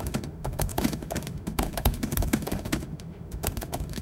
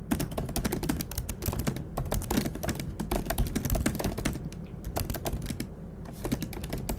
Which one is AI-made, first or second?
first